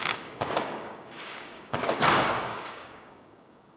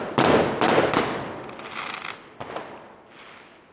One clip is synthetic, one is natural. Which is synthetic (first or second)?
first